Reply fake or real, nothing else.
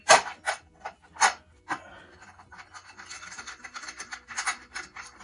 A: real